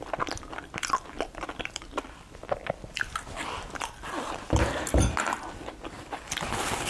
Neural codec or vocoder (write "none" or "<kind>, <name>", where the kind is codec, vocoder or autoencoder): none